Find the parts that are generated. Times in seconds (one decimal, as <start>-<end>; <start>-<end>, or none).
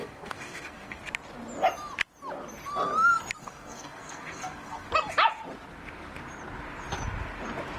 0.0-1.0; 3.4-4.9